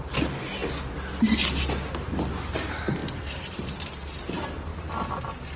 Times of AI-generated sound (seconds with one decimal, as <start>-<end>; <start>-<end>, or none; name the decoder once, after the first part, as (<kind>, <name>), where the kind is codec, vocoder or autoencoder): none